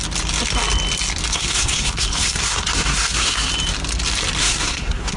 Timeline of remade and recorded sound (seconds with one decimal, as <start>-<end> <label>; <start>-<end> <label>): 0.0-1.3 recorded; 1.3-3.5 remade; 3.5-4.4 recorded; 4.4-5.2 remade